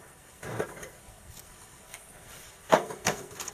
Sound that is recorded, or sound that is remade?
remade